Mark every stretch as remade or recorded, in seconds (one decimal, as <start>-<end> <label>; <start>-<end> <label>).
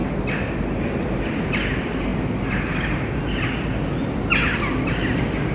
0.0-5.5 recorded